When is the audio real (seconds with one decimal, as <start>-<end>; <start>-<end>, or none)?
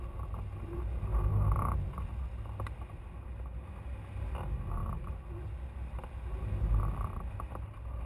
0.0-8.1